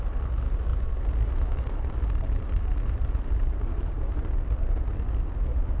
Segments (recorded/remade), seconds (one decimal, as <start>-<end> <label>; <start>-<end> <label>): 0.0-0.7 recorded; 0.7-4.2 remade; 4.2-5.8 recorded